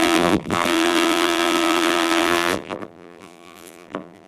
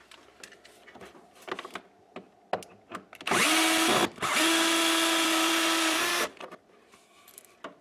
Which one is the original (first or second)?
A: second